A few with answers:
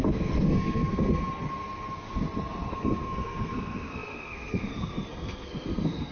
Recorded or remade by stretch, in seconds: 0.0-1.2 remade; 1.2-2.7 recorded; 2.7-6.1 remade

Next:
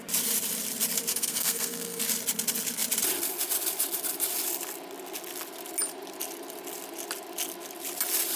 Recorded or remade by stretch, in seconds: 0.0-1.1 recorded; 1.1-2.0 remade; 2.0-8.4 recorded

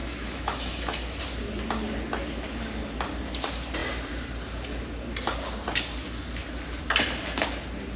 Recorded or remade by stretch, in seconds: 0.0-1.2 remade; 1.2-8.0 recorded

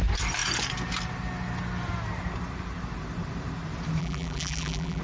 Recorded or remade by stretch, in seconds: 0.0-4.0 recorded; 4.0-5.0 remade

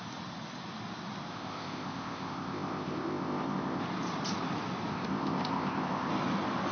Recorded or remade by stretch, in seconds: 0.0-1.3 recorded; 1.3-3.8 remade; 3.8-4.9 recorded; 4.9-6.1 remade; 6.1-6.7 recorded

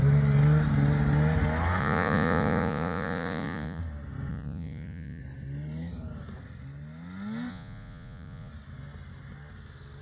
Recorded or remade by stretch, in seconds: 0.0-1.8 recorded; 1.8-3.8 remade; 3.8-4.3 recorded; 4.3-5.2 remade; 5.2-7.5 recorded; 7.5-8.5 remade; 8.5-10.0 recorded

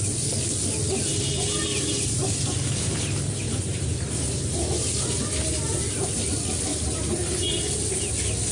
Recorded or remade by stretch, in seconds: 0.0-1.7 recorded; 1.7-5.2 remade; 5.2-6.7 recorded; 6.7-7.5 remade; 7.5-8.5 recorded